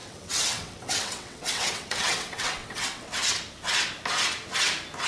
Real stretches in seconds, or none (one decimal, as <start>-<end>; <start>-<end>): 3.1-5.1